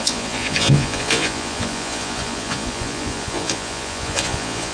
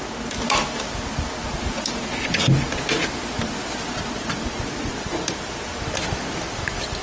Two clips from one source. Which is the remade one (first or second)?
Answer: first